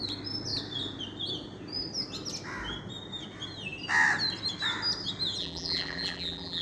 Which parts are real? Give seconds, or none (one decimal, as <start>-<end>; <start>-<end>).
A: 0.0-5.4